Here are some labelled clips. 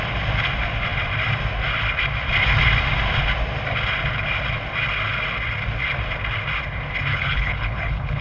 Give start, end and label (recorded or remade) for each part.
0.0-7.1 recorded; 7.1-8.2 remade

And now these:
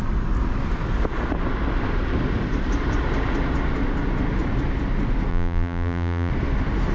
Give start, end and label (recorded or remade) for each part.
0.0-5.3 recorded; 5.3-6.3 remade; 6.3-6.9 recorded